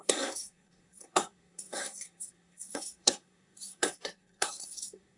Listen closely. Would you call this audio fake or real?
fake